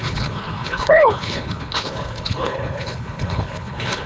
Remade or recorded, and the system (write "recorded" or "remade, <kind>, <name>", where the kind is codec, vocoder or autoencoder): remade, codec, HILCodec